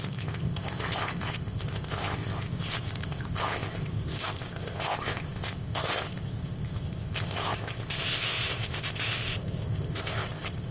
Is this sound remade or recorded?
remade